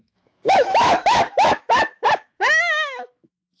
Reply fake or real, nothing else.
fake